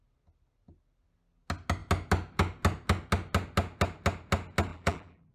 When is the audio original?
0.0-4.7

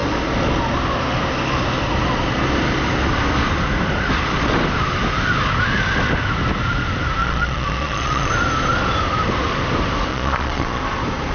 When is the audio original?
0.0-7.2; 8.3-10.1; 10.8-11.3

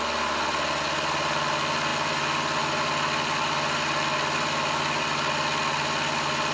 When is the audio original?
0.0-6.5